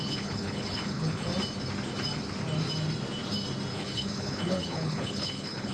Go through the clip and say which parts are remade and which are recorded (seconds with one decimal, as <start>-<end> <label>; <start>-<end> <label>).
0.0-1.3 remade; 1.3-3.7 recorded; 3.7-5.7 remade